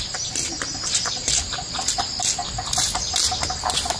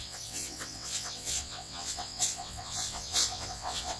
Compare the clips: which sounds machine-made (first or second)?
second